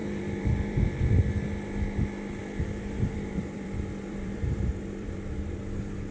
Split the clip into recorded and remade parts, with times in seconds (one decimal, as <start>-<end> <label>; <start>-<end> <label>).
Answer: 0.0-1.2 remade; 1.2-2.4 recorded; 2.4-5.6 remade; 5.6-6.1 recorded